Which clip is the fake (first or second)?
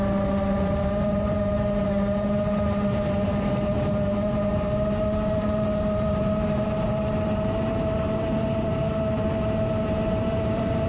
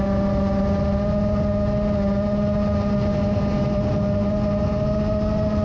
first